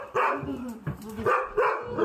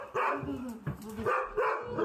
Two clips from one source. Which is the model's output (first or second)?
first